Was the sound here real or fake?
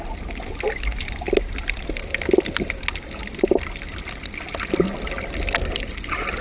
real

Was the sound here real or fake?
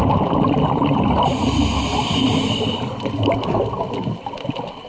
real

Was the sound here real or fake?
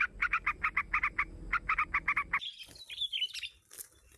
real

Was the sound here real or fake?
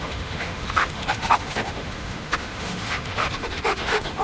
fake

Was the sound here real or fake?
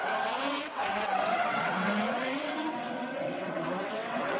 fake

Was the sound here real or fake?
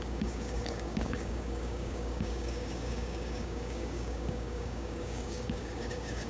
fake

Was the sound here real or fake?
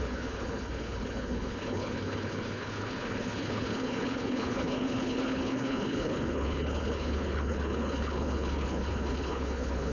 fake